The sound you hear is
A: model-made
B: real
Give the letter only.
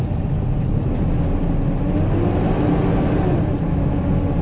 B